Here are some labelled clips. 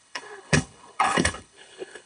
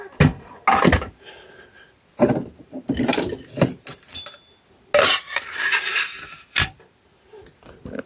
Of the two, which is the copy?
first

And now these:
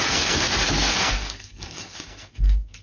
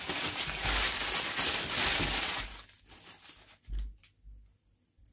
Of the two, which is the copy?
first